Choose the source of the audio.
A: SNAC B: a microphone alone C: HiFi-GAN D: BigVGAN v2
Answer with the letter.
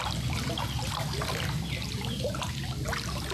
B